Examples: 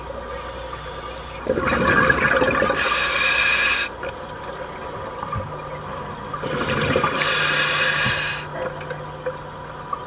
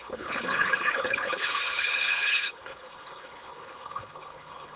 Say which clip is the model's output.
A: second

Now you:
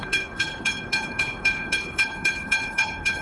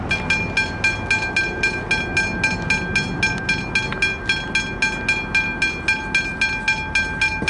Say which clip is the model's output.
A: first